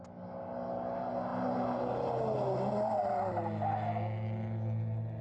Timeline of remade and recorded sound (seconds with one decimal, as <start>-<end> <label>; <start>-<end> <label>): 0.0-5.2 recorded